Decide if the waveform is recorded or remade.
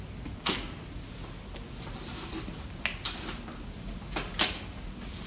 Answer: recorded